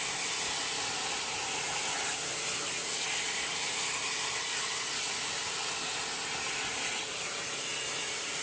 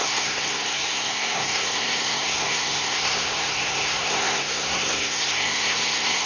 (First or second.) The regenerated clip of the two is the second